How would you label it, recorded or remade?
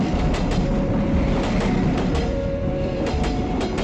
remade